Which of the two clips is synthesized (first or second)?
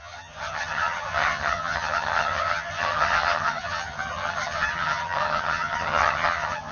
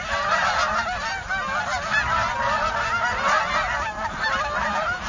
first